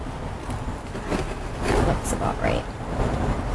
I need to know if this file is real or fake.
real